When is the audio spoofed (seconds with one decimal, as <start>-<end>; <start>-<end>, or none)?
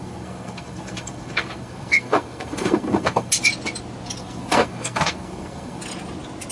0.0-3.3; 4.2-5.8